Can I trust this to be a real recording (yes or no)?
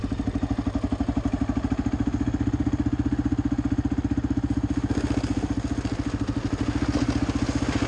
yes